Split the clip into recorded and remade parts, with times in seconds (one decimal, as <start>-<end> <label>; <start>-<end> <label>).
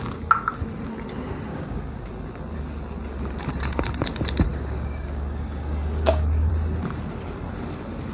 0.0-1.5 recorded; 1.5-2.1 remade; 2.1-4.5 recorded; 4.5-6.5 remade; 6.5-8.1 recorded